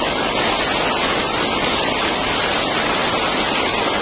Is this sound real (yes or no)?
yes